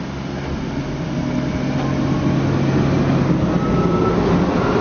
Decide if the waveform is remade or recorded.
recorded